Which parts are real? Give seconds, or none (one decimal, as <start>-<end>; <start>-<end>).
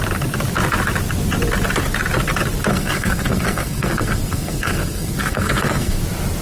0.0-2.7; 6.0-6.4